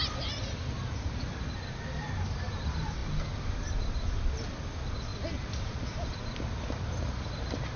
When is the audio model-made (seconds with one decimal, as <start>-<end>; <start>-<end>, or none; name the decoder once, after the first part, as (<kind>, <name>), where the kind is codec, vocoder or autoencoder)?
none